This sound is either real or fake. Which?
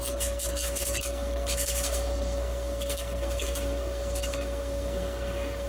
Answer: fake